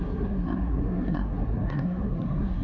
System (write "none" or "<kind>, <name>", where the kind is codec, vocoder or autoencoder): codec, SNAC